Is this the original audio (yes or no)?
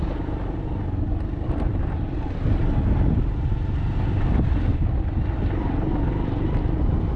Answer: yes